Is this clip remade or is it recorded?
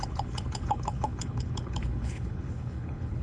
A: remade